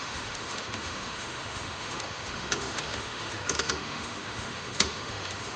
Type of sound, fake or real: fake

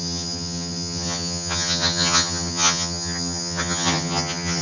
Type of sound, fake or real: fake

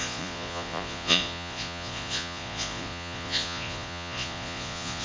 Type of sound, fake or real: fake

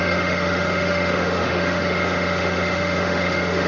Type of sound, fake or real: fake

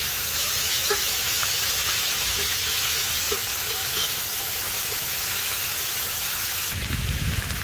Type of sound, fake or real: fake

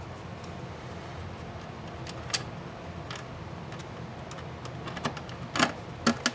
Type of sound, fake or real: real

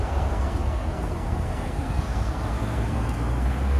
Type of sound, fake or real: fake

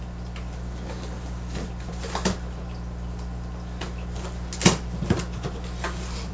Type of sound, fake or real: real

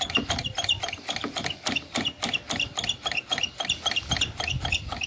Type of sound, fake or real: real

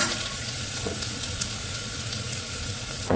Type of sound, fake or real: fake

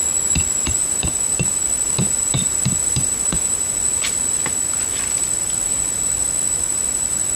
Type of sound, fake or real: real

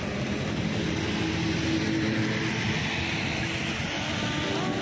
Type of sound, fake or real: real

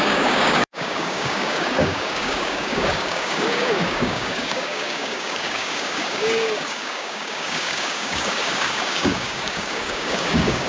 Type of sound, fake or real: fake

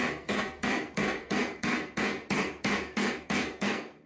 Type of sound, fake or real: fake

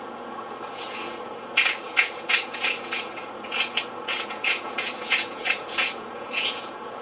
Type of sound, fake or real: fake